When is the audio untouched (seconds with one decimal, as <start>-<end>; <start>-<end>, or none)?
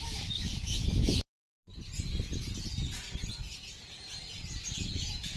1.7-4.9